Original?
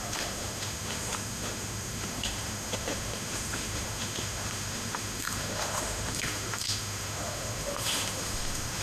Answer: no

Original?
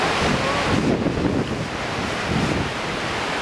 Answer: yes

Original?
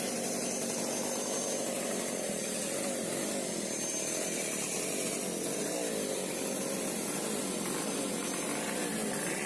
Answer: yes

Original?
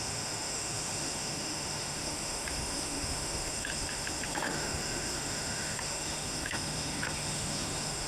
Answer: no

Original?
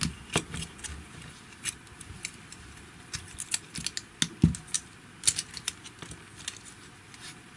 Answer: yes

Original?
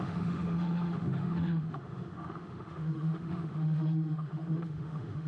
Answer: no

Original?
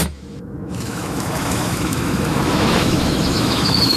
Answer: no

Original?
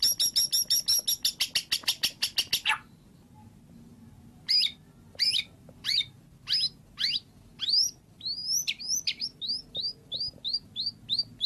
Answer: yes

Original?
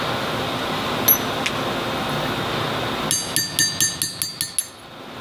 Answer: yes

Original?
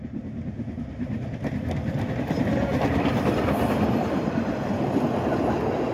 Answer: yes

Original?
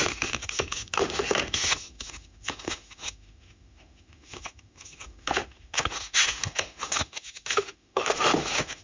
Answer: no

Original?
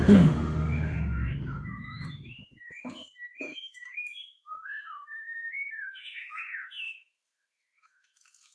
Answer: no